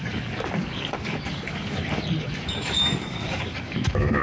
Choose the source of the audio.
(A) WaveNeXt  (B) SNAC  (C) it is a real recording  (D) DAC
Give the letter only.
D